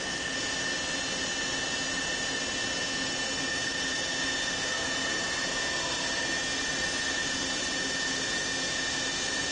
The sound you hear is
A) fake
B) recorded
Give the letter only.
B